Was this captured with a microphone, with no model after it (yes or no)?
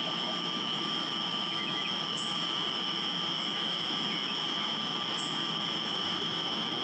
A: no